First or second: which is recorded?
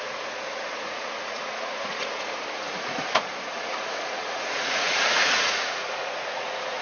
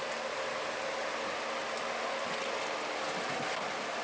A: second